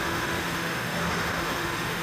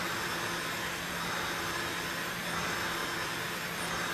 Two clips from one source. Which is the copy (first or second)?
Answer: first